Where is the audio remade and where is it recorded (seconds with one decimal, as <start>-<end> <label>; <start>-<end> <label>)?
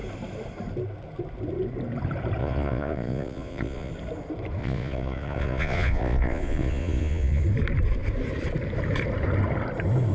0.0-2.4 recorded; 2.4-3.9 remade; 3.9-4.6 recorded; 4.6-7.4 remade; 7.4-10.1 recorded